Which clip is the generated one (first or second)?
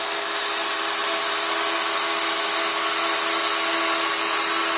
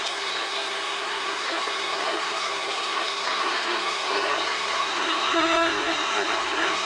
second